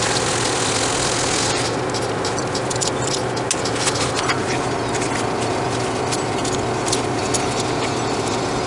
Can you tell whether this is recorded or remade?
recorded